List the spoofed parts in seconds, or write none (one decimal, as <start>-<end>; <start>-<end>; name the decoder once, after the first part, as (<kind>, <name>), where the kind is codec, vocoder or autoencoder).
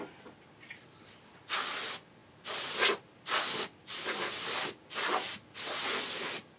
none